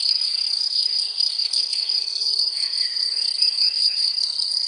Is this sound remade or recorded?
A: remade